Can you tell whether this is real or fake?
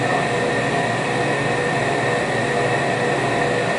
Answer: real